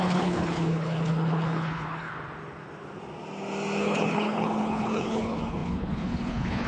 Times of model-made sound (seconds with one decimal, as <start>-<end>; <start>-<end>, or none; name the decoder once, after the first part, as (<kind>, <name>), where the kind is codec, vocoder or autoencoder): 0.0-2.1 (codec, HILCodec); 3.8-6.7